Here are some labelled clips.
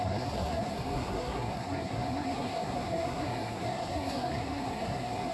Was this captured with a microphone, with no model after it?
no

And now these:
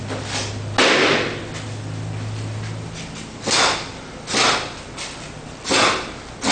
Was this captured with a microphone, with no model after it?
yes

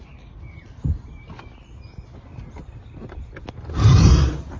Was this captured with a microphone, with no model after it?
yes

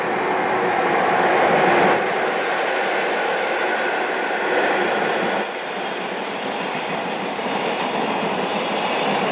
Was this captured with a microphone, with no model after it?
yes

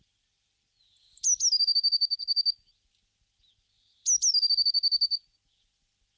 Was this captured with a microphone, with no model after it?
yes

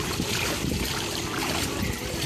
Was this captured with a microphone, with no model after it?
yes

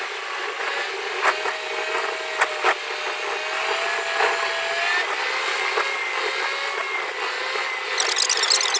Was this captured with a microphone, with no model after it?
yes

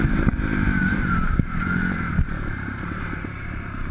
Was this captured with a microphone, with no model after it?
no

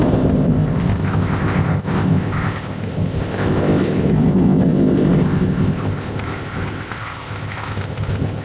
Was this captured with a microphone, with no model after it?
no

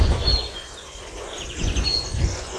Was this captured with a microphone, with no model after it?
no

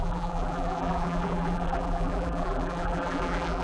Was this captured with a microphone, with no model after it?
no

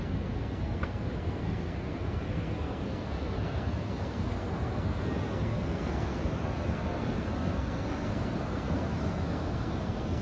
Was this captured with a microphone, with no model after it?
no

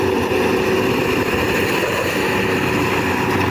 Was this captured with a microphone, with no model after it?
yes